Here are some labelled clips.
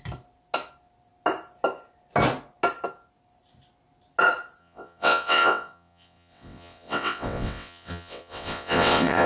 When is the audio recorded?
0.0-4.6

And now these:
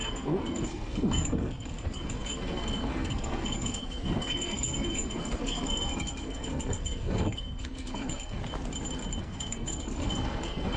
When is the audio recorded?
8.4-9.2

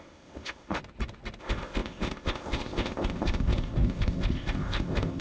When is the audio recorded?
0.8-1.4

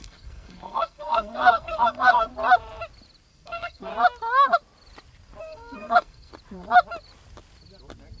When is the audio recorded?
2.3-3.3; 3.9-5.4; 6.3-8.2

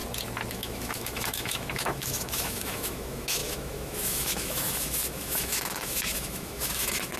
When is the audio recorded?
0.0-0.5